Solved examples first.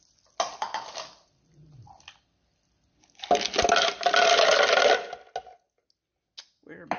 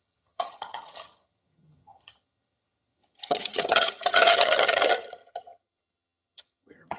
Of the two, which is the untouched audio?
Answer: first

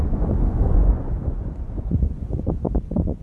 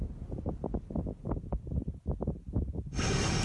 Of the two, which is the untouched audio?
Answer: second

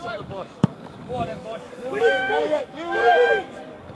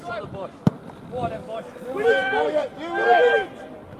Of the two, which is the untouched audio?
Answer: second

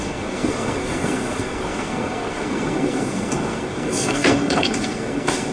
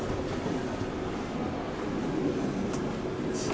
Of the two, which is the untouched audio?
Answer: second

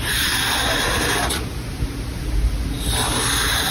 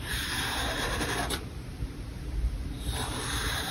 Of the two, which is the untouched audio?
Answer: first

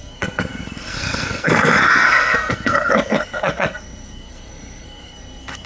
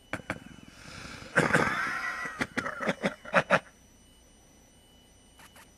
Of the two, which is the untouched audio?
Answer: second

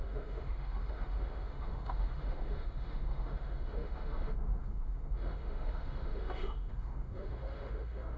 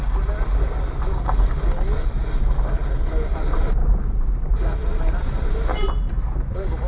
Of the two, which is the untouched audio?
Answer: second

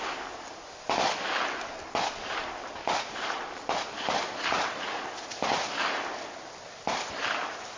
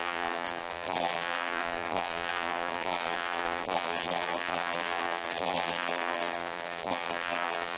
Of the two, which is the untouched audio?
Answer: first